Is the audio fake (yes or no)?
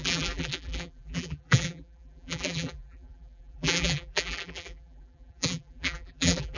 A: yes